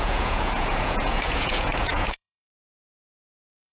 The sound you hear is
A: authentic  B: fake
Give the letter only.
B